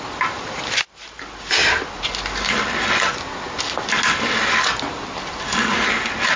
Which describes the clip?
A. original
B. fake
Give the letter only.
A